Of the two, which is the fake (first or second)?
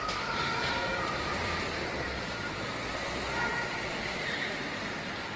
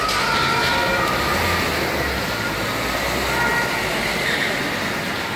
first